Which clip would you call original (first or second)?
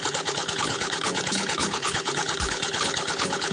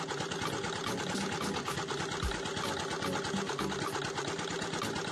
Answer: second